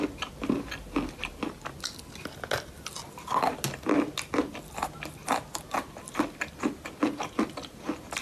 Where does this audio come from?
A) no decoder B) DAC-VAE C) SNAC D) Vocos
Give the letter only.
A